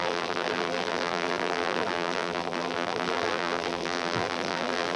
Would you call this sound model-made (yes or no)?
yes